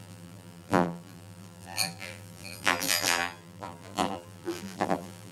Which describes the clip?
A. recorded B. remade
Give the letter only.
B